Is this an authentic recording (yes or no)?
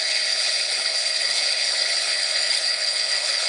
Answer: no